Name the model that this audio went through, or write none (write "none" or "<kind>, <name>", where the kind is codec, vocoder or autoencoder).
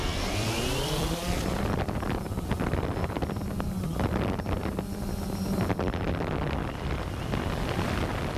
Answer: vocoder, BigVGAN v2